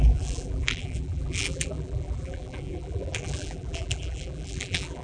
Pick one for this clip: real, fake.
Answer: fake